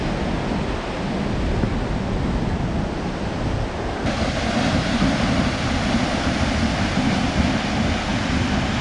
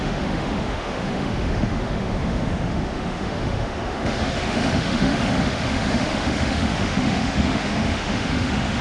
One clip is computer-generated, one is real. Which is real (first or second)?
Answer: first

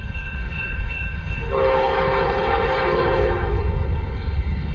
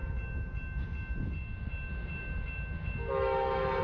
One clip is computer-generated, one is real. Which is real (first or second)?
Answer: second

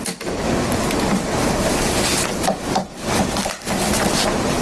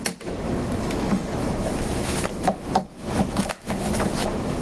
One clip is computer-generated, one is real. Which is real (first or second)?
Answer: first